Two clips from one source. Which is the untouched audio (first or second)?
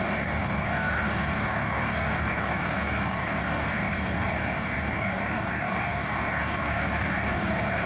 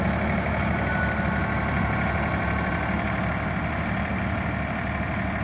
second